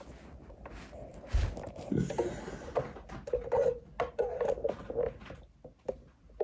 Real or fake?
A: real